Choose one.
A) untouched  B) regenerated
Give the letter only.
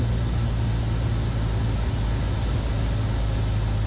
A